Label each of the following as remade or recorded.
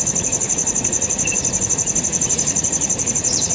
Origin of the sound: remade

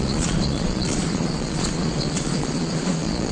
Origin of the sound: remade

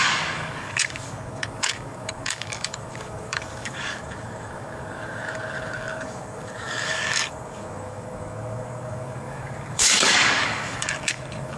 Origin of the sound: remade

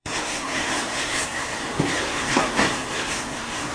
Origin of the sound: remade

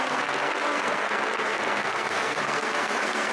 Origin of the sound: remade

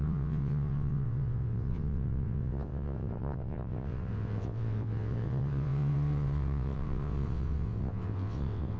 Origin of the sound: remade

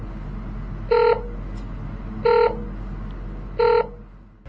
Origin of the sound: recorded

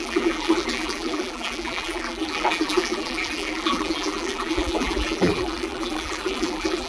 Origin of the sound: remade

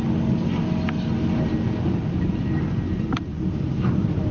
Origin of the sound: recorded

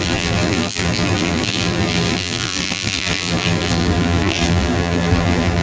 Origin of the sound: remade